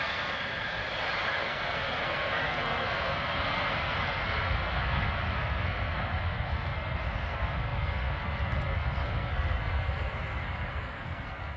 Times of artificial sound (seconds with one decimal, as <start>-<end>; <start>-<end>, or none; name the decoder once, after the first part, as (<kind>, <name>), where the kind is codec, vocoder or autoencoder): 0.0-0.8 (codec, SNAC); 1.3-11.6